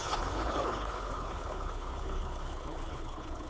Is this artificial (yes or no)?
yes